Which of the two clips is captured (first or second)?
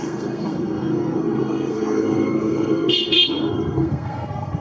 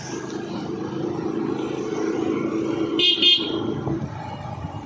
second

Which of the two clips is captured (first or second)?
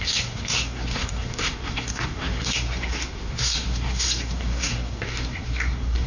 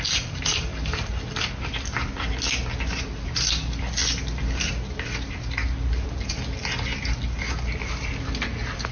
second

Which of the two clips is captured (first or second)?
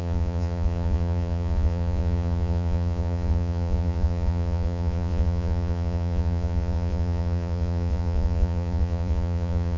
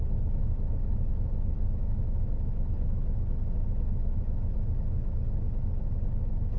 second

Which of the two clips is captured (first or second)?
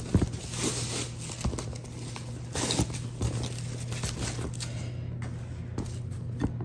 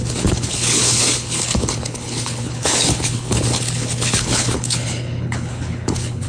first